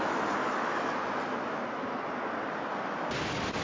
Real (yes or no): yes